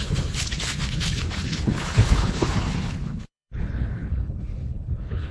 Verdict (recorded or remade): remade